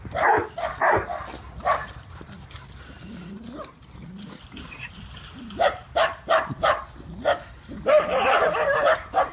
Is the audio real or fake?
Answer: real